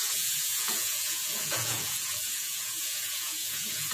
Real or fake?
fake